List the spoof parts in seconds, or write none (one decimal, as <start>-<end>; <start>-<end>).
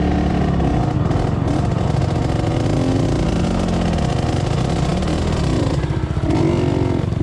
none